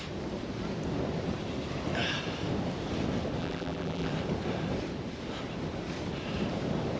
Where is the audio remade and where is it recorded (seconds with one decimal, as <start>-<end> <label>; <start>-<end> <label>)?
0.0-3.4 recorded; 3.4-4.1 remade; 4.1-7.0 recorded

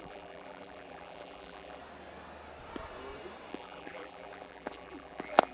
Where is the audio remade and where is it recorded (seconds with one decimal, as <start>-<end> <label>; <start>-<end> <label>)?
0.0-1.8 remade; 1.8-3.5 recorded; 3.5-5.5 remade